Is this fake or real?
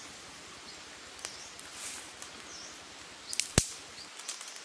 real